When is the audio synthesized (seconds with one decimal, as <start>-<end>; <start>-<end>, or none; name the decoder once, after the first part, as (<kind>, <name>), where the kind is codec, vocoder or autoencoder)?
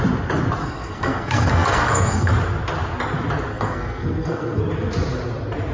0.6-2.3 (codec, SNAC); 3.5-4.6